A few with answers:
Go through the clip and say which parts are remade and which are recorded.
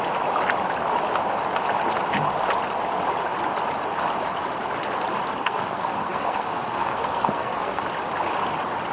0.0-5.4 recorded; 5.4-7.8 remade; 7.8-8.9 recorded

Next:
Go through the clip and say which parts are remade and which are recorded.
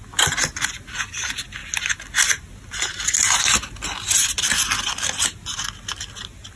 0.0-6.6 recorded